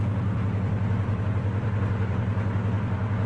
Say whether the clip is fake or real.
fake